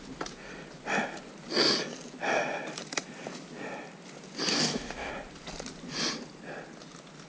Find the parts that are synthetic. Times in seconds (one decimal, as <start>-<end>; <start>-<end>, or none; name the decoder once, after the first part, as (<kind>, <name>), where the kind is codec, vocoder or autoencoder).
4.5-5.1 (codec, DAC)